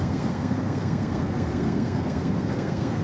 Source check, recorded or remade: remade